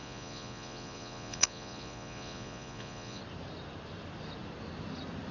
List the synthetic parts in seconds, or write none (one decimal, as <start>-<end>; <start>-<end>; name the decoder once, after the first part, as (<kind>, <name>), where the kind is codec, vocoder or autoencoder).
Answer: 0.0-3.2 (vocoder, Vocos)